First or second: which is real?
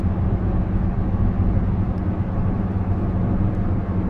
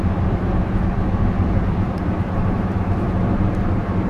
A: first